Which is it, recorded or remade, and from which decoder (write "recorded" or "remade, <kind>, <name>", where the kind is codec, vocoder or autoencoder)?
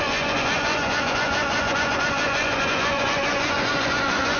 remade, vocoder, Vocos